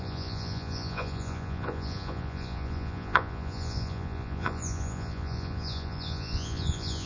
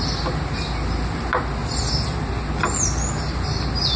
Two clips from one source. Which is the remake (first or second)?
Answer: first